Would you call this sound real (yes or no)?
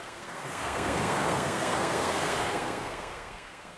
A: no